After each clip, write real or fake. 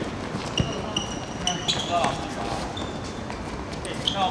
real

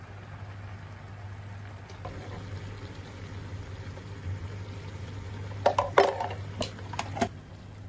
real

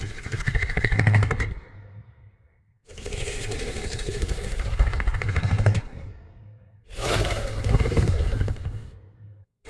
fake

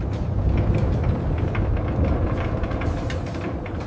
real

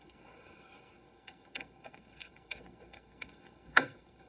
fake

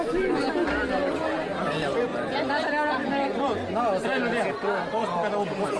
real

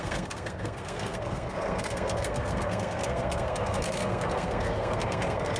fake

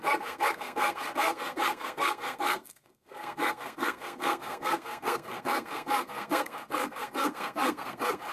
fake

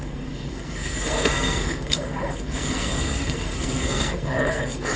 fake